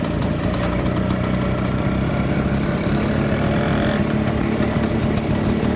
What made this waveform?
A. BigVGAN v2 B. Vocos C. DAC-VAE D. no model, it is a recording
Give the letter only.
D